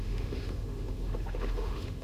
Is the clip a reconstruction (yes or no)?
yes